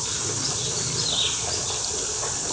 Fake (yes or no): no